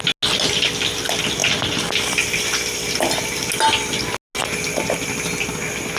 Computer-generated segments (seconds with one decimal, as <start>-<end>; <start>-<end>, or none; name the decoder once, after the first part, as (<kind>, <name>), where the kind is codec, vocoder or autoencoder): 1.4-3.5 (vocoder, BigVGAN v2); 4.4-5.4